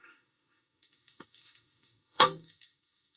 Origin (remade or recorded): remade